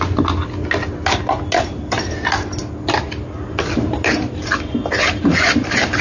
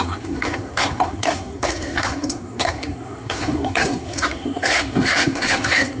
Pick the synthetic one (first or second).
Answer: second